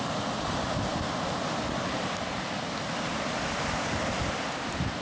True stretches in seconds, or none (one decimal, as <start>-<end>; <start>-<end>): 0.0-5.0